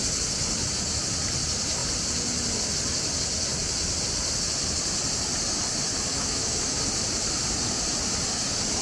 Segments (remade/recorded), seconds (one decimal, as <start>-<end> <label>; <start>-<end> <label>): 0.0-6.1 recorded; 6.1-6.8 remade; 6.8-8.8 recorded